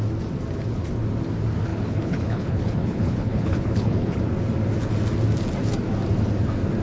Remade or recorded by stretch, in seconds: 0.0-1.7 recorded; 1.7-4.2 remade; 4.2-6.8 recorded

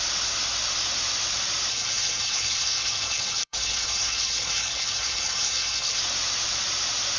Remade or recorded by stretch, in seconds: 0.0-1.7 recorded; 1.7-6.0 remade; 6.0-7.2 recorded

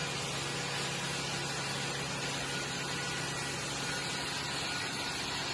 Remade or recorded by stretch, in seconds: 0.0-5.5 recorded

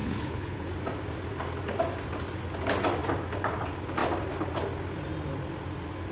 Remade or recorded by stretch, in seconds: 0.0-0.7 remade; 0.7-6.1 recorded

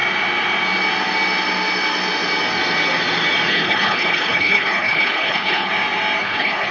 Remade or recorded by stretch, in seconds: 0.0-3.5 recorded; 3.5-5.7 remade; 5.7-6.2 recorded; 6.2-6.7 remade